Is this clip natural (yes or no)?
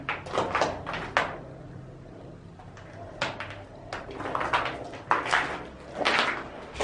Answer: yes